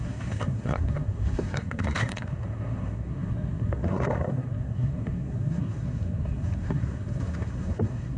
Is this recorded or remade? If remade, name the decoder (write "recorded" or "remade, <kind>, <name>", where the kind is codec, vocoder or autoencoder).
remade, codec, SNAC